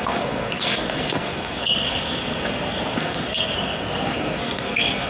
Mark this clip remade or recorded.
remade